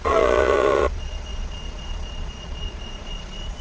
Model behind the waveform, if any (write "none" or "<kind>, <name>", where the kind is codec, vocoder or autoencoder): vocoder, Vocos